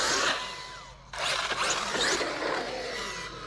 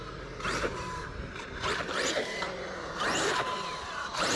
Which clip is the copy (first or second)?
second